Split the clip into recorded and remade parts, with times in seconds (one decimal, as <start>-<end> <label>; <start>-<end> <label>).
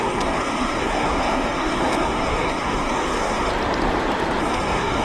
0.0-3.5 remade; 3.5-4.4 recorded; 4.4-5.0 remade